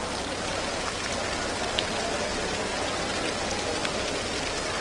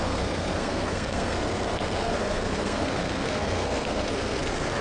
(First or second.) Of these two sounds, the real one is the first